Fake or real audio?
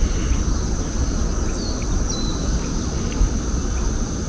real